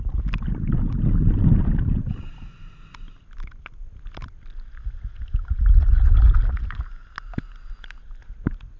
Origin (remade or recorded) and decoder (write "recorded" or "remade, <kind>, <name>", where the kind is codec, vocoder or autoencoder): recorded